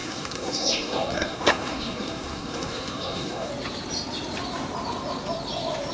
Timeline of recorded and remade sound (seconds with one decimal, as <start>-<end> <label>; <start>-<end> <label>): 0.0-3.5 remade; 3.5-5.9 recorded